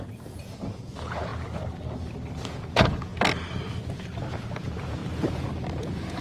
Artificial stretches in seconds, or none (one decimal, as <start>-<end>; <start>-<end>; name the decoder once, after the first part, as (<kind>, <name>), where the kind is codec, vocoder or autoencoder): 0.0-1.3 (vocoder, Vocos); 2.5-3.1; 4.3-5.0; 5.7-6.2